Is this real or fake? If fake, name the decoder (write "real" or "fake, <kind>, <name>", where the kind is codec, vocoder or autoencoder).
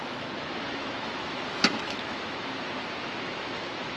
fake, autoencoder, DAC-VAE